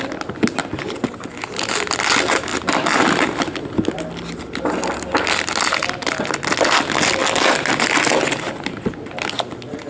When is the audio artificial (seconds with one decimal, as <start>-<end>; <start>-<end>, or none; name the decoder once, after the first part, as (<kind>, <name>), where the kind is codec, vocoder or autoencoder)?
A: none